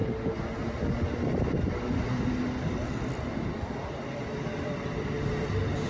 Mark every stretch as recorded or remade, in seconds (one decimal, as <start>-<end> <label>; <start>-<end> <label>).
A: 0.0-5.9 recorded